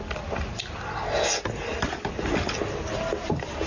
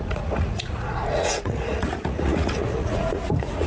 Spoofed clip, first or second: second